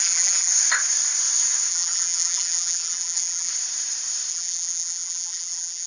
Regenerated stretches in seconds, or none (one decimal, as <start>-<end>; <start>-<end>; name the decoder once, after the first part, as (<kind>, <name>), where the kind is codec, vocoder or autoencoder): 0.0-0.5 (vocoder, BigVGAN v2); 1.7-3.5; 4.3-5.9